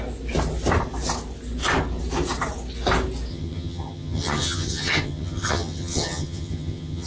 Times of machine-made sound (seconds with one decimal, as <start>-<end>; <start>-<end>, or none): 3.3-7.1